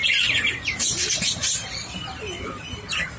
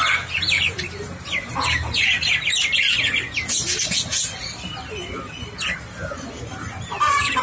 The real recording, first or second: second